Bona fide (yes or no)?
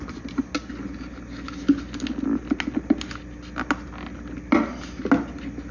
yes